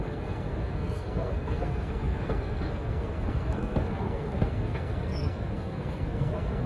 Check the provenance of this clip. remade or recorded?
remade